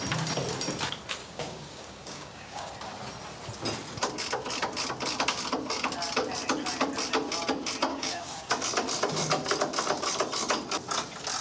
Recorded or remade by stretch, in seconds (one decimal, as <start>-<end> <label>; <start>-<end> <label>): 0.0-1.2 recorded; 1.2-2.7 remade; 2.7-7.9 recorded; 7.9-8.5 remade; 8.5-11.4 recorded